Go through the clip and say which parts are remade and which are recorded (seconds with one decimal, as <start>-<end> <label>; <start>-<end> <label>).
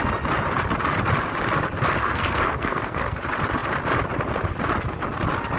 0.0-2.0 recorded; 2.0-3.2 remade; 3.2-5.6 recorded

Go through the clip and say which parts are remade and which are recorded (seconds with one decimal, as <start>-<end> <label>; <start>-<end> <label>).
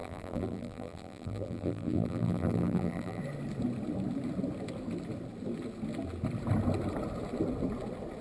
0.0-3.2 remade; 3.2-8.2 recorded